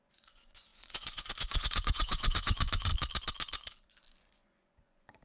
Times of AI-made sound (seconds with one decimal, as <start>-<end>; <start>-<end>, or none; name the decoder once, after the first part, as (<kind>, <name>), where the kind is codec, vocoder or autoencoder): 0.0-2.9 (vocoder, Vocos); 4.2-5.2